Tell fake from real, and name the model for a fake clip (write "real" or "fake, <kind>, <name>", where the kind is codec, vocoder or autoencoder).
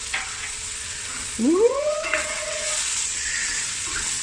fake, vocoder, WaveNeXt